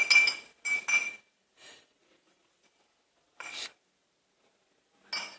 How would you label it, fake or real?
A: real